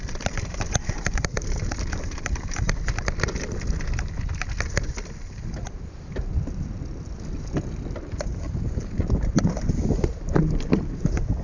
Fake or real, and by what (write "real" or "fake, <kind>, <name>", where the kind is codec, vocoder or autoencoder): real